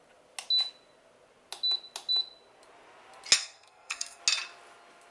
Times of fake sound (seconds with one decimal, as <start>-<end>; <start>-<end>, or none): 3.4-4.2